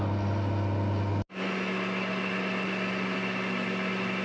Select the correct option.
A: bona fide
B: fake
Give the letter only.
A